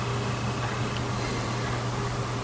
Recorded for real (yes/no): yes